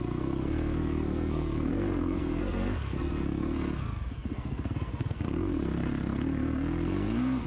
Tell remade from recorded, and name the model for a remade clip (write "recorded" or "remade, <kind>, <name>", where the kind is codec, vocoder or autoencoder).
remade, codec, SNAC